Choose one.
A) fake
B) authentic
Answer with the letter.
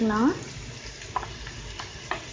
B